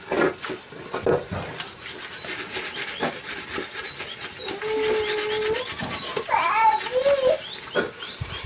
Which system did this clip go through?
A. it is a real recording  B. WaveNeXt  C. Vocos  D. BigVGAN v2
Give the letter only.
A